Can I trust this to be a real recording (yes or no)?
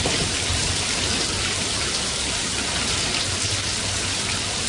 yes